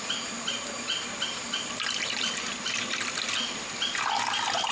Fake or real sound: real